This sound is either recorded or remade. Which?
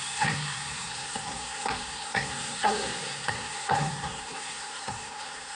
remade